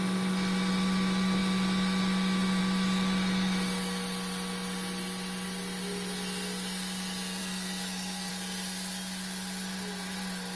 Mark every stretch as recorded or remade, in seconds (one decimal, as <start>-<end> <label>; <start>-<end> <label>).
0.0-7.4 recorded; 7.4-8.3 remade; 8.3-10.6 recorded